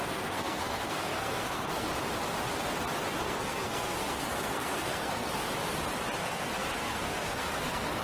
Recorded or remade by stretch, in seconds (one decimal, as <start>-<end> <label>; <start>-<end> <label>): 0.0-1.9 remade; 1.9-3.1 recorded; 3.1-5.3 remade; 5.3-6.2 recorded; 6.2-8.0 remade